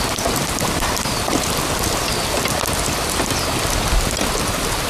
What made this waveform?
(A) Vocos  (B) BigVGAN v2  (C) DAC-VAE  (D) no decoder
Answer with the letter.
D